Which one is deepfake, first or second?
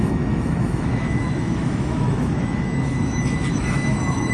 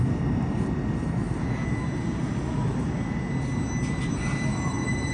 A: first